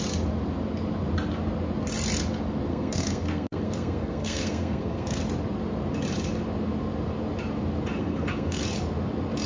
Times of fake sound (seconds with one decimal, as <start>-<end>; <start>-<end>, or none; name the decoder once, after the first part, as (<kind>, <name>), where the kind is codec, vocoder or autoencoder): 2.7-5.2 (codec, SNAC); 8.0-8.6